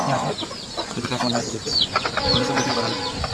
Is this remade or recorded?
remade